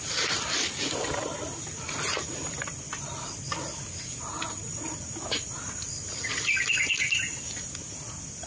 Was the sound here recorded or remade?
recorded